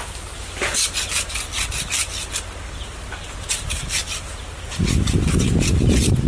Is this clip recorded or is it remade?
recorded